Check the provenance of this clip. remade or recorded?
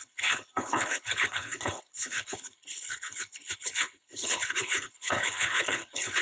remade